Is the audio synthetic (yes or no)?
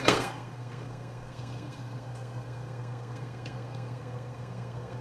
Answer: yes